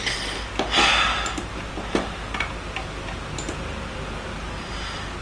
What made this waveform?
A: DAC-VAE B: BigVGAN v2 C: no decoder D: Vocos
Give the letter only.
C